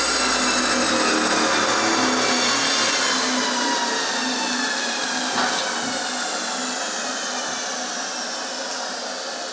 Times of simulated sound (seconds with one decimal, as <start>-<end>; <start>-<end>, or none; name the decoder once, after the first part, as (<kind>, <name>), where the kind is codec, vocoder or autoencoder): none